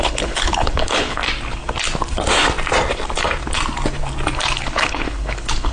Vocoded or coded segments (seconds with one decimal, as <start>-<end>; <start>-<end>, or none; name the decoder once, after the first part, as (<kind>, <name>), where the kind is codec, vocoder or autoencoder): 0.0-1.2 (codec, HILCodec); 4.6-5.7